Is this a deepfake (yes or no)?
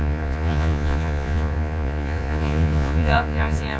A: yes